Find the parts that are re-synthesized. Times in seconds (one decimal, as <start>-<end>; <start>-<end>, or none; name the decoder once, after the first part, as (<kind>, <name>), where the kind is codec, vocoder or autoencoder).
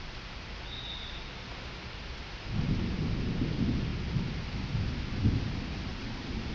5.9-6.5 (vocoder, BigVGAN v2)